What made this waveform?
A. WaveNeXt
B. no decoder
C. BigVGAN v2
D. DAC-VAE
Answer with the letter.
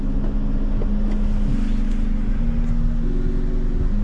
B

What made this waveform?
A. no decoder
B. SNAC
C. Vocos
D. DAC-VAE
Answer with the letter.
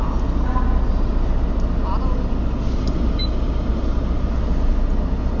A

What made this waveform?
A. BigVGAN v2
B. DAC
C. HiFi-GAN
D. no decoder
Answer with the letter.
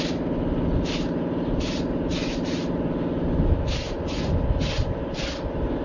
D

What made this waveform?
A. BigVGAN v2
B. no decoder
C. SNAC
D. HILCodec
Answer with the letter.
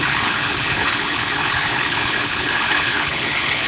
D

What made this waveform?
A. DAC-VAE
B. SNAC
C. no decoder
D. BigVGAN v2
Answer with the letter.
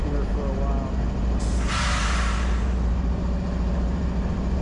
C